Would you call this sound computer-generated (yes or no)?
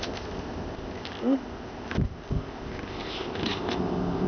yes